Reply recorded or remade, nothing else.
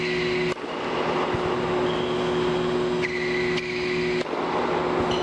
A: recorded